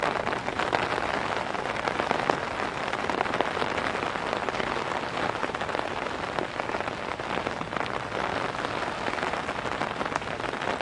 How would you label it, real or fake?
real